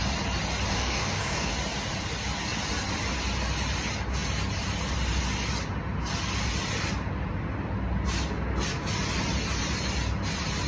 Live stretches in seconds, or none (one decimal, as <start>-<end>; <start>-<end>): 0.0-0.7; 1.5-10.7